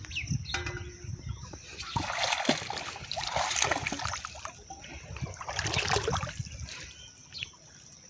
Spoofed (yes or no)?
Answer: no